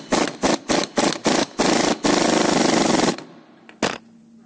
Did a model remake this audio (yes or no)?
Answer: no